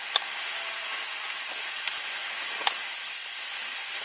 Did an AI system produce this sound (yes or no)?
no